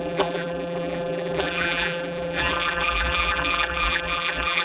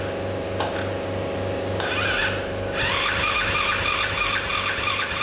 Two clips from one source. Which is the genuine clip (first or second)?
second